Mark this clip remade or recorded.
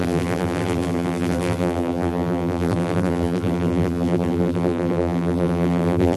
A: remade